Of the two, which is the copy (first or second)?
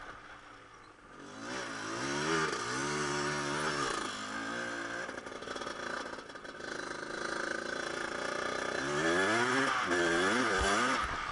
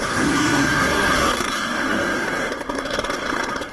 second